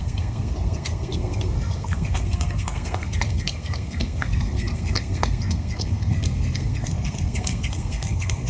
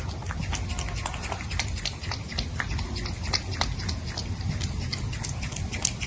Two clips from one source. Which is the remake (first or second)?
first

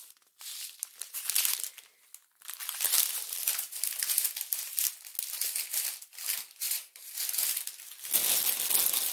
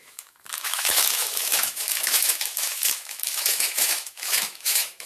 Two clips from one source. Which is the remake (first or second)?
second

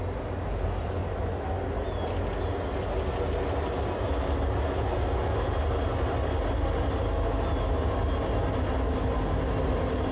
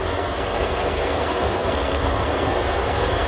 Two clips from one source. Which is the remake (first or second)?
second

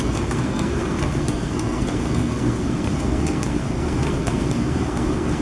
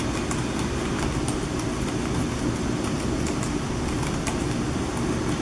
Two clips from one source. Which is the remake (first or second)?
first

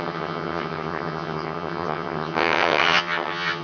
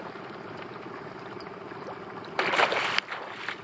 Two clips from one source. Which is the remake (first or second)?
first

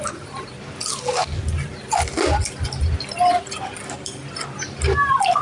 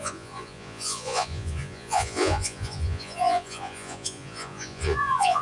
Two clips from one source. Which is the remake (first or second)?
second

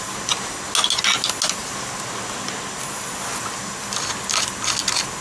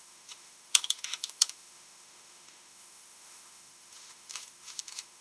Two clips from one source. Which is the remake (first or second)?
second